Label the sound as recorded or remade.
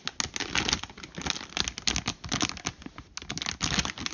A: recorded